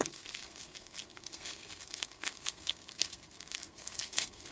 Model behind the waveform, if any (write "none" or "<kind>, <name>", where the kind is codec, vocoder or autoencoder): codec, SNAC